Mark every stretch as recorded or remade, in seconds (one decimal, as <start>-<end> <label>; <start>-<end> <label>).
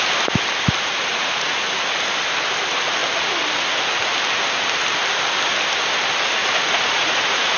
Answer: 0.0-1.1 recorded; 1.1-1.9 remade; 1.9-6.4 recorded; 6.4-7.6 remade